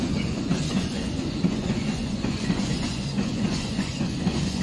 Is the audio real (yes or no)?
no